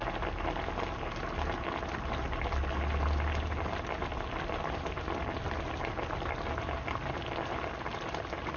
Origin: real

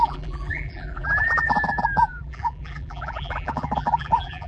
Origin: fake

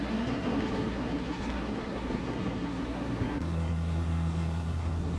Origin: fake